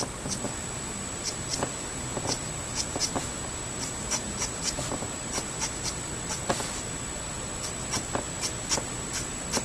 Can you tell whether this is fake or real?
real